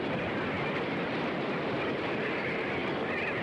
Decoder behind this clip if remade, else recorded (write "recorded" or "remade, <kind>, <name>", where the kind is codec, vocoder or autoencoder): recorded